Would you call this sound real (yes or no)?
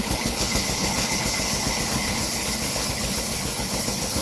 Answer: no